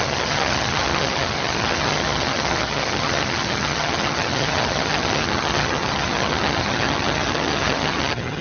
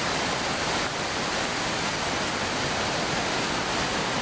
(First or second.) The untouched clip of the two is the second